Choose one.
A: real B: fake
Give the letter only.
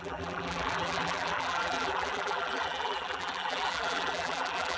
B